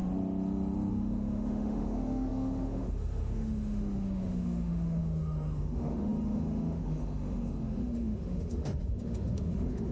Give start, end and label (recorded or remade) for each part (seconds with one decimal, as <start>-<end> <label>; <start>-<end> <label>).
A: 0.0-0.9 recorded; 0.9-9.9 remade